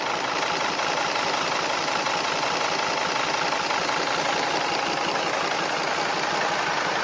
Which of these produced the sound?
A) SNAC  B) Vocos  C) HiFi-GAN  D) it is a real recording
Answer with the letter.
D